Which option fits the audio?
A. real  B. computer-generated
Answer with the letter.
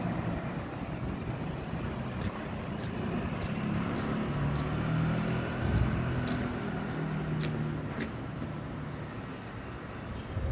A